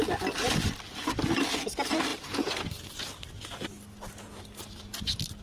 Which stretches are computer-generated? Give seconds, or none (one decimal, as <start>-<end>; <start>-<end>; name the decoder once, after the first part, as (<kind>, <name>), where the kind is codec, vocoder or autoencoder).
none